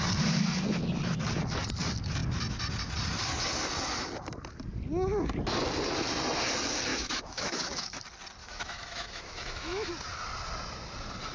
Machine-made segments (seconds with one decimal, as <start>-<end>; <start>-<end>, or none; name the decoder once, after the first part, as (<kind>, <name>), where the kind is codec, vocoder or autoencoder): 6.9-8.0 (autoencoder, DAC-VAE); 8.4-9.9

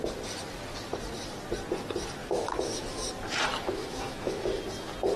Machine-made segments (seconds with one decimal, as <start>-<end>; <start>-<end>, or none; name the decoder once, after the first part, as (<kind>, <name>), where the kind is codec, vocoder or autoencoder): 2.2-3.0 (autoencoder, DAC-VAE); 3.8-4.6

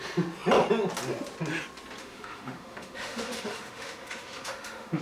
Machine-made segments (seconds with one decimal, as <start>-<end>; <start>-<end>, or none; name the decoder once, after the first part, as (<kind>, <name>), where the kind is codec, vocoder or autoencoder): 2.0-5.0 (autoencoder, DAC-VAE)

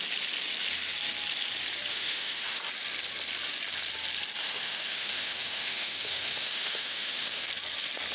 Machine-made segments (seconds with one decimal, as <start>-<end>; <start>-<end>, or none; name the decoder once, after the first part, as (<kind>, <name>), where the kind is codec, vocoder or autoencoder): 1.9-2.6 (autoencoder, DAC-VAE); 4.4-7.5

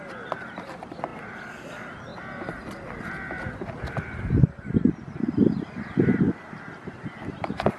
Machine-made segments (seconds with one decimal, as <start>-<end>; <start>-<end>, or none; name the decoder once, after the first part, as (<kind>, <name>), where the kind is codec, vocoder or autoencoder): none

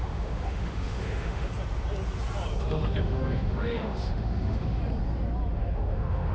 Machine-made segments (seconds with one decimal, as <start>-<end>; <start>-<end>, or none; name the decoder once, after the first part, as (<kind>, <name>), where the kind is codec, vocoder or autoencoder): 0.0-1.5 (autoencoder, DAC-VAE); 2.6-4.8; 5.5-6.3

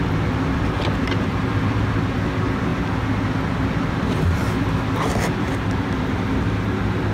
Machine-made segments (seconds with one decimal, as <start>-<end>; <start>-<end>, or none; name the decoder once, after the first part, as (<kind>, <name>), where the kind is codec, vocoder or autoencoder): none

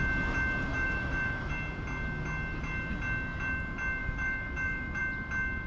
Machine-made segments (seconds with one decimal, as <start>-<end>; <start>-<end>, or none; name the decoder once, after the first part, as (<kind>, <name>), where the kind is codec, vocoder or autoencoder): 0.7-1.5 (autoencoder, DAC-VAE); 4.0-5.0